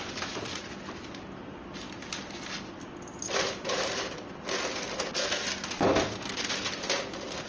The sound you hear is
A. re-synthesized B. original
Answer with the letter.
B